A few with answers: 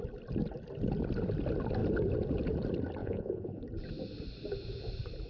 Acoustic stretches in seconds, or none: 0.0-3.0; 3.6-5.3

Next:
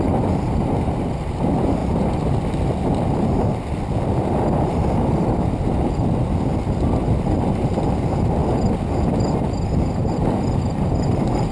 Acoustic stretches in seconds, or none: 0.0-11.5

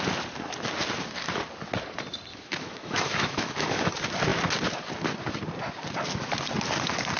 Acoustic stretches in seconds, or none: 0.0-2.3; 3.9-7.2